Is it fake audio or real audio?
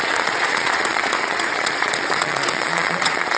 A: fake